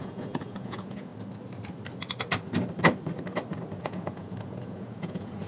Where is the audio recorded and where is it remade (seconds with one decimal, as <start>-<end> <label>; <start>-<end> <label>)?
0.0-1.1 remade; 1.1-3.8 recorded; 3.8-5.5 remade